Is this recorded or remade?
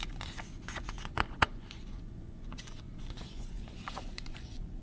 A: remade